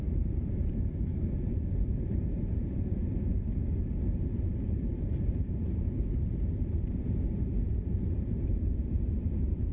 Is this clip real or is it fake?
fake